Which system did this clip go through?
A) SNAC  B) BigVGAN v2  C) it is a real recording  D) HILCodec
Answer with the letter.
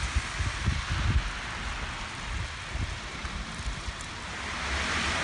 C